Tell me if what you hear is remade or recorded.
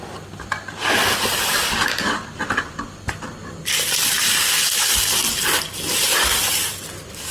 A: recorded